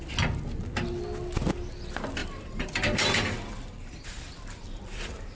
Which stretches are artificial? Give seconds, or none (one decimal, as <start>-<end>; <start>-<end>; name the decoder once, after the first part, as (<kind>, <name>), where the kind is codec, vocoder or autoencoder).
2.2-5.4 (vocoder, BigVGAN v2)